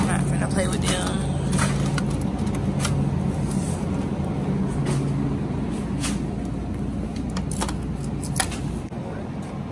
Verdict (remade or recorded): recorded